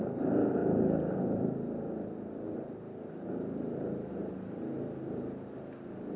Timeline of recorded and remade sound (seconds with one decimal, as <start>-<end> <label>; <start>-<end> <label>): 0.0-6.2 recorded